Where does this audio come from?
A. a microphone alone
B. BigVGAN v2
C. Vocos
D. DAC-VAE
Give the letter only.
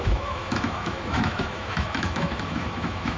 D